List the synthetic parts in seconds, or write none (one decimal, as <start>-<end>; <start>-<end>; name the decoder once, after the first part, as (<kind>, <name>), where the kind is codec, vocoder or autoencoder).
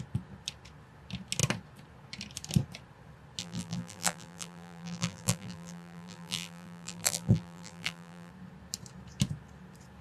3.4-8.3 (vocoder, BigVGAN v2)